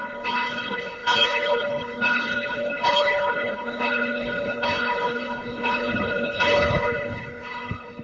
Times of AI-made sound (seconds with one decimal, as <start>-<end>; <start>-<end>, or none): 0.0-8.0